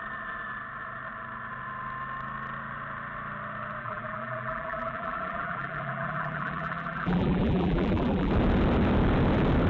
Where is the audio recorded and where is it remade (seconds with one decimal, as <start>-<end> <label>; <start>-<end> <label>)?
0.0-3.8 recorded; 3.8-8.3 remade; 8.3-9.7 recorded